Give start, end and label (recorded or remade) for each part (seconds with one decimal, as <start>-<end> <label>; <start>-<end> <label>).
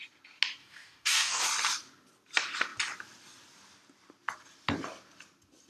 0.0-0.6 recorded; 0.6-1.4 remade; 1.4-5.7 recorded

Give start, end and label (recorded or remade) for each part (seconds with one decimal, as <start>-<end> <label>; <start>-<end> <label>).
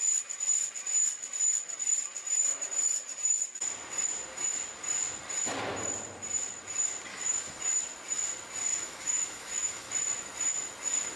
0.0-7.1 recorded; 7.1-7.6 remade; 7.6-8.7 recorded; 8.7-9.9 remade; 9.9-11.2 recorded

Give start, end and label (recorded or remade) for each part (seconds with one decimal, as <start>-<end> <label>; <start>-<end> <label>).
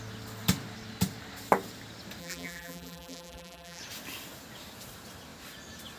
0.0-2.2 recorded; 2.2-3.8 remade; 3.8-6.0 recorded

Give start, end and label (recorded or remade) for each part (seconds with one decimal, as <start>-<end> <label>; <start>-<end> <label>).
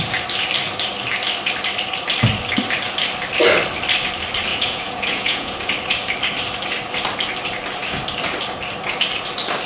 0.0-4.5 recorded; 4.5-5.7 remade; 5.7-9.7 recorded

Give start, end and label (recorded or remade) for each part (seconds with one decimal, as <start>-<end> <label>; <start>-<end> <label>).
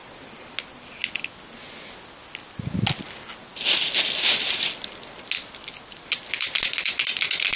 0.0-7.6 recorded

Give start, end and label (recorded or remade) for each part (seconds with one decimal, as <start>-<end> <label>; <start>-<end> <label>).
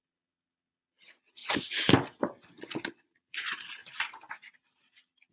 0.0-1.4 remade; 1.4-2.5 recorded; 2.5-3.8 remade; 3.8-4.5 recorded; 4.5-5.3 remade